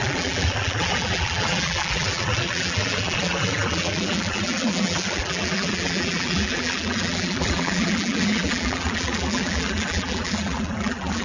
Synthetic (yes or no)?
yes